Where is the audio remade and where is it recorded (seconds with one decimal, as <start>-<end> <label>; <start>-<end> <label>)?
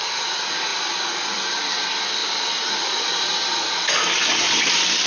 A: 0.0-5.1 recorded